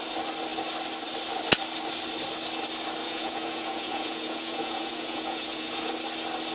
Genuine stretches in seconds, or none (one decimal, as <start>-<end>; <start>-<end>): 0.0-3.0; 5.9-6.5